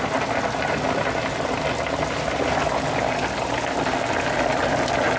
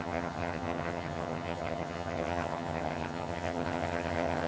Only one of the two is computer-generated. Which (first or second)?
second